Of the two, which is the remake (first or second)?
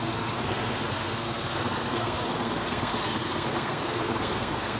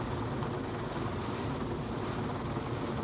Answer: first